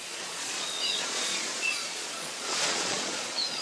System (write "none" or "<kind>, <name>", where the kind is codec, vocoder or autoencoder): vocoder, Vocos